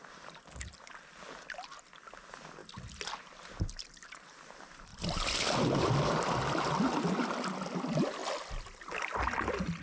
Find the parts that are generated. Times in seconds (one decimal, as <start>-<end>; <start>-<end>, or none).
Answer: none